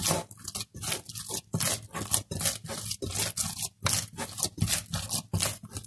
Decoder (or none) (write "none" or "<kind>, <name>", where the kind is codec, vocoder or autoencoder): none